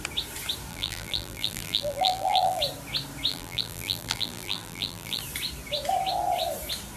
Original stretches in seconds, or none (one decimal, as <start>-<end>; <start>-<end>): 0.0-0.7; 2.6-3.3; 5.2-7.0